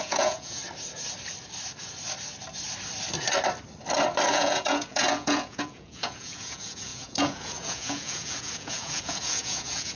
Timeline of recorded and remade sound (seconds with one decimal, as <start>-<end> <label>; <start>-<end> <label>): 0.0-0.6 remade; 0.6-4.3 recorded; 4.3-10.0 remade